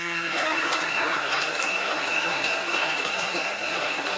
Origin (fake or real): fake